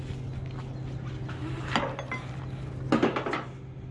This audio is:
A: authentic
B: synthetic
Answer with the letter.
A